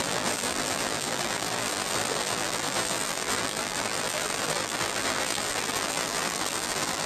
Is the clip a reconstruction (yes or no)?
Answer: yes